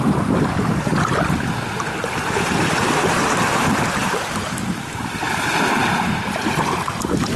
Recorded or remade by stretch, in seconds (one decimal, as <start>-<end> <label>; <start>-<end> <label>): 0.0-0.9 remade; 0.9-5.3 recorded; 5.3-7.4 remade